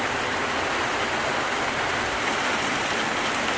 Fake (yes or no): no